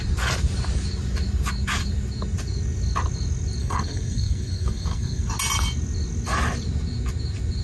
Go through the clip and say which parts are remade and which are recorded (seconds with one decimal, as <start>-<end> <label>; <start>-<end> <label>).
0.0-3.6 recorded; 3.6-5.3 remade; 5.3-7.6 recorded